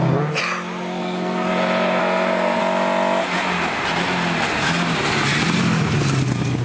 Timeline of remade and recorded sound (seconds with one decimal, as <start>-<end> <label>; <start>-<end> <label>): 0.0-1.0 recorded; 1.0-1.5 remade; 1.5-2.0 recorded; 2.0-2.6 remade; 2.6-6.6 recorded